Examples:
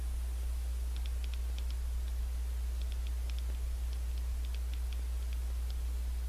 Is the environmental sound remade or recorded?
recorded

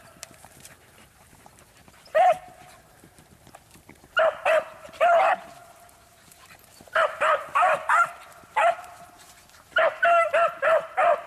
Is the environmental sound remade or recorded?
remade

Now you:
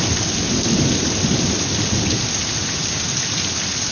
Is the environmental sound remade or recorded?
recorded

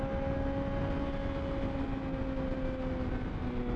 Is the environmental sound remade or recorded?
recorded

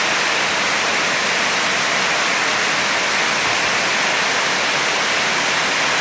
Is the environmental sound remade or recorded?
recorded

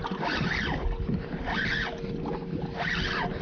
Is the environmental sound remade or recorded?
recorded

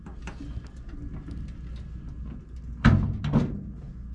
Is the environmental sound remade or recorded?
recorded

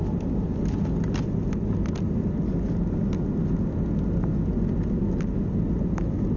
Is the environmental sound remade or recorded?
recorded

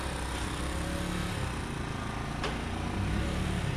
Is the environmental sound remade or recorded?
recorded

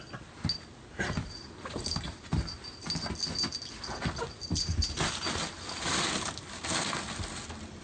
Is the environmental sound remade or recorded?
recorded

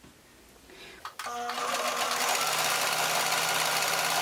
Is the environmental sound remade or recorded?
recorded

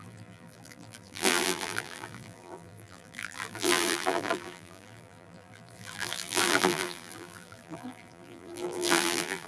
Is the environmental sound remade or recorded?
remade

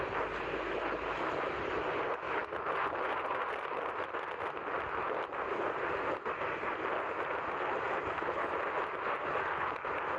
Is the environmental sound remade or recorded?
recorded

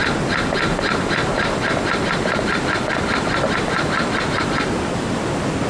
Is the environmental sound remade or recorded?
recorded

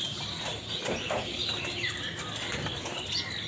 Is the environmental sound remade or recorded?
recorded